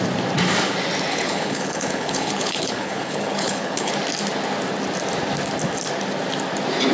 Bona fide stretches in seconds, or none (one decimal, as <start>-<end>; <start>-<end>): 0.0-1.1; 3.9-6.9